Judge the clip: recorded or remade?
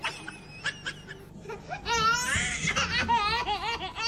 recorded